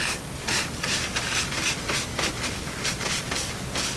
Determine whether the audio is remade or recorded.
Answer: recorded